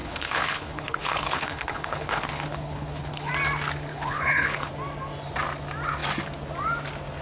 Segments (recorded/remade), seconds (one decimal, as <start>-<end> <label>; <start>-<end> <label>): 0.0-3.3 remade; 3.3-3.9 recorded; 3.9-4.7 remade; 4.7-7.2 recorded